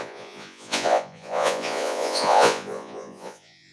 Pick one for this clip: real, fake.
fake